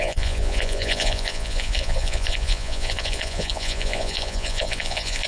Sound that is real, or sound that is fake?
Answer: fake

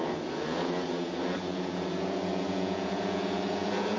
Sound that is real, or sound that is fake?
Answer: fake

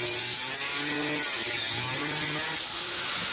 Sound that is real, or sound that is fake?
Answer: real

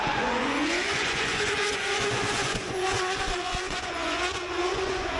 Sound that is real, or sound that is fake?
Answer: fake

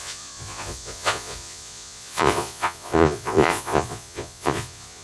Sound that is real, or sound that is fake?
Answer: fake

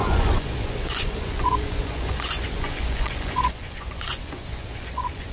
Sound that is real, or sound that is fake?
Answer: fake